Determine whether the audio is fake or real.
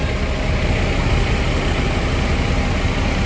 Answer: real